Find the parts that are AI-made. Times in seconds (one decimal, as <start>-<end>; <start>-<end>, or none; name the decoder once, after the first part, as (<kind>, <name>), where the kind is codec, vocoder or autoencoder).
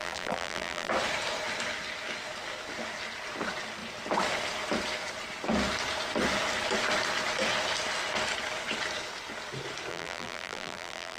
0.0-0.9 (vocoder, BigVGAN v2); 9.9-11.2